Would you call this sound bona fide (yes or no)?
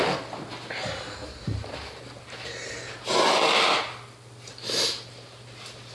yes